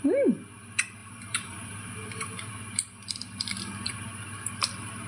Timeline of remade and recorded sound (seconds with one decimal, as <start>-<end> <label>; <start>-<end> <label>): 0.0-1.0 recorded; 1.0-3.7 remade; 3.7-5.1 recorded